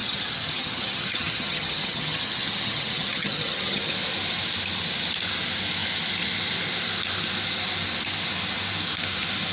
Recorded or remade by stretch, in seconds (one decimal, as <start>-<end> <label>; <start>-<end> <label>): 0.0-3.9 remade; 3.9-9.5 recorded